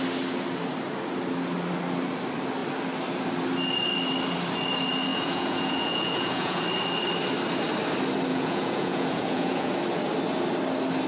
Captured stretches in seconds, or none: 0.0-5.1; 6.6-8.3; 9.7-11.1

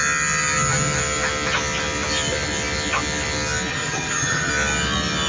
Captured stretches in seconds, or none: 0.0-3.7; 4.5-5.3

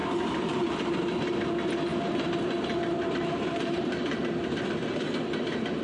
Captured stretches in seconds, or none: 1.0-1.9; 4.8-5.8

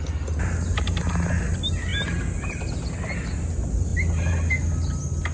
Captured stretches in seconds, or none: 0.0-5.3